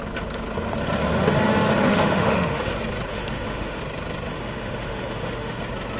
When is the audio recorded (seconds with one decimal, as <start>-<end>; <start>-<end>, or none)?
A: 0.0-1.9; 2.7-3.1; 3.8-4.3; 5.6-6.0